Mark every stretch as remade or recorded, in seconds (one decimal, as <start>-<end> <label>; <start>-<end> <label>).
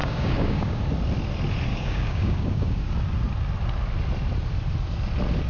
0.0-0.8 remade; 0.8-1.7 recorded; 1.7-2.9 remade; 2.9-5.5 recorded